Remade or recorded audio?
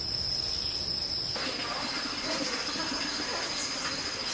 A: recorded